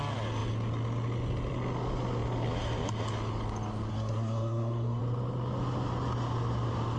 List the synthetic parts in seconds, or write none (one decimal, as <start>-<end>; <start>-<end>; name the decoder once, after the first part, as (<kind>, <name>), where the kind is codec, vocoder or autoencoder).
3.9-5.0 (codec, SNAC)